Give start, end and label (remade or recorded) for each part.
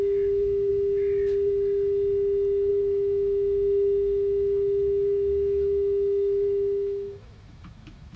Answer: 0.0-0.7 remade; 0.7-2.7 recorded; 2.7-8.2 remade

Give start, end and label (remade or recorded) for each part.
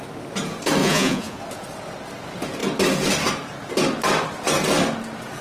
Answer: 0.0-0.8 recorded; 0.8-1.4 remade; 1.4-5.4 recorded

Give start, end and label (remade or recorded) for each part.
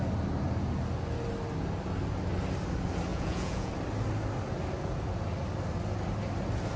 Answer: 0.0-3.1 recorded; 3.1-3.7 remade; 3.7-6.8 recorded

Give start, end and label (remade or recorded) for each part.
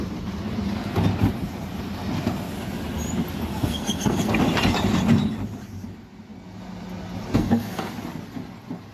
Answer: 0.0-3.5 recorded; 3.5-4.4 remade; 4.4-7.3 recorded; 7.3-7.9 remade; 7.9-8.9 recorded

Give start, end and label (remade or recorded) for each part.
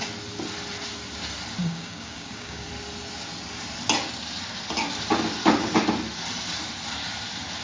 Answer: 0.0-1.6 recorded; 1.6-2.7 remade; 2.7-7.6 recorded